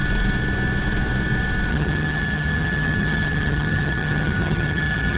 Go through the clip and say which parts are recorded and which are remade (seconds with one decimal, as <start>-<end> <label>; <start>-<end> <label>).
0.0-1.7 recorded; 1.7-5.2 remade